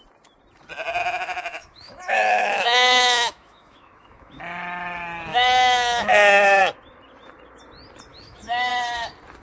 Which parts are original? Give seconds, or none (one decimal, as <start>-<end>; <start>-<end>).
0.0-1.0; 4.4-5.3; 6.6-8.1; 8.7-9.4